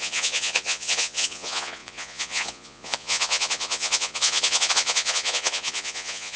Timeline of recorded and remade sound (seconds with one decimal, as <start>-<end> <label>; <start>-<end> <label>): 0.0-6.4 remade